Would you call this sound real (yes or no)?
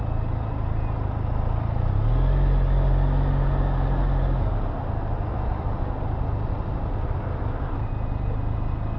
yes